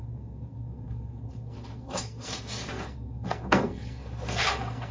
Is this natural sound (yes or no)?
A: no